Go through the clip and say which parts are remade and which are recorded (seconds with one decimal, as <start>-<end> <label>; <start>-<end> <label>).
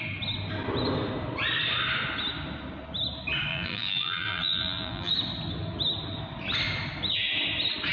0.0-3.5 recorded; 3.5-5.1 remade; 5.1-7.9 recorded